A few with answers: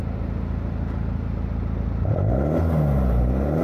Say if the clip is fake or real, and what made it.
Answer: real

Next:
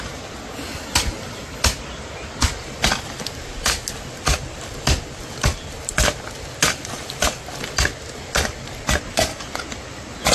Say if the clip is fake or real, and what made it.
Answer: real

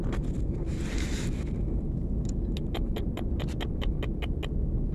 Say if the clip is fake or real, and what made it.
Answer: real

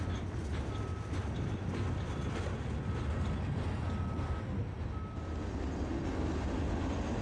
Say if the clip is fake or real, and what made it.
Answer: real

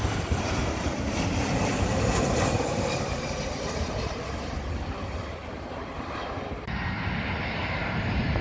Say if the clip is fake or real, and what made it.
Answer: fake, vocoder, BigVGAN v2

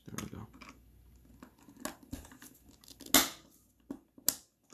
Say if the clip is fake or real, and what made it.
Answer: real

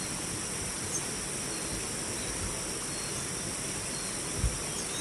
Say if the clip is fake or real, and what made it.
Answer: real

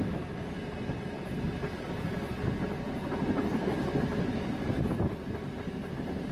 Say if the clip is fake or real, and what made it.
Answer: real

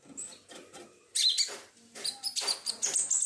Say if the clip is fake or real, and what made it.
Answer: real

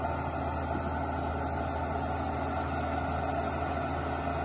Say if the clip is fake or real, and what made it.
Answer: real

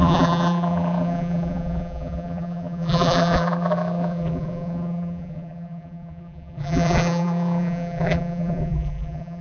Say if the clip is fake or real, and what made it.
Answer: fake, vocoder, BigVGAN v2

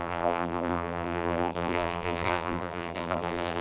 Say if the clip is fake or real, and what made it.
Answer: fake, vocoder, BigVGAN v2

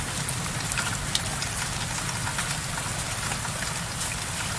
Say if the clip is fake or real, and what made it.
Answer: real